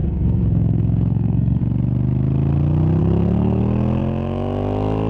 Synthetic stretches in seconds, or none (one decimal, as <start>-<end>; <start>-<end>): 0.0-1.6; 3.0-3.6